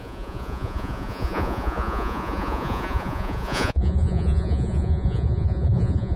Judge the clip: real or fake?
fake